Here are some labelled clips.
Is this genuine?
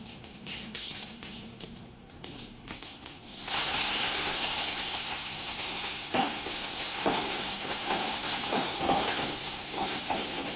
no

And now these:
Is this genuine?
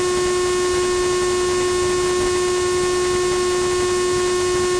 yes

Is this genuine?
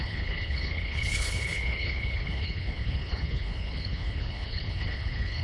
no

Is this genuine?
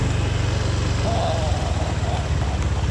yes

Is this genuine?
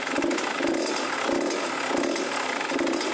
yes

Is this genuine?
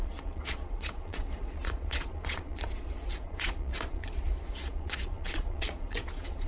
no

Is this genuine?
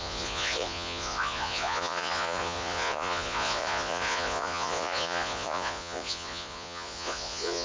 no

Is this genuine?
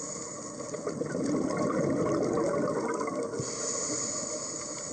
yes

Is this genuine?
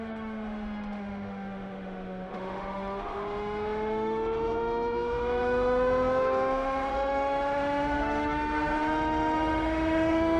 no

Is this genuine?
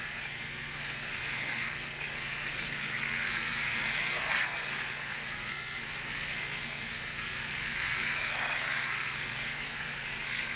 no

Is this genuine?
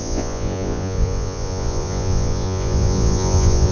no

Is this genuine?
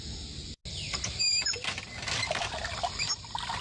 yes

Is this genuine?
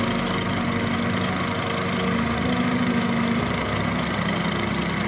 yes